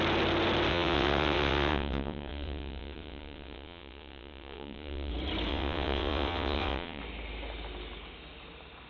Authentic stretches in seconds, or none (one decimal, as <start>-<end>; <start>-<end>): 0.0-0.7; 5.1-5.5; 7.0-8.9